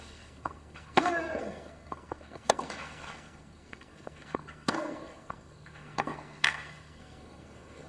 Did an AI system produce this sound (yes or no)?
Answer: yes